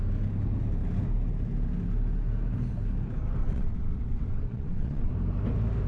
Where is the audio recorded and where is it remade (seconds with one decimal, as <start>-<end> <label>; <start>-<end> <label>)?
0.0-3.4 recorded; 3.4-5.1 remade; 5.1-5.9 recorded